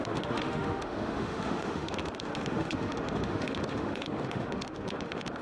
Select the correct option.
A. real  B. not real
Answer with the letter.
B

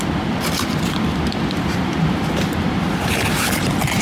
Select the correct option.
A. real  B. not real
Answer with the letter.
B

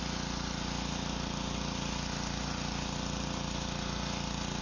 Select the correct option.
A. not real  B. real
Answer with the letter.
B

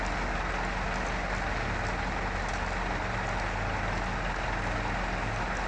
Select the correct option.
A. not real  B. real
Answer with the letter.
B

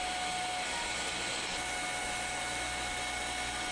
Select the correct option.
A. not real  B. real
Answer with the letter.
B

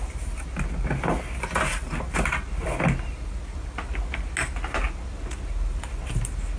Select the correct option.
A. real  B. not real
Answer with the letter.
A